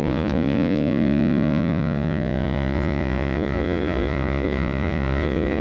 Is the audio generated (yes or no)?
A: yes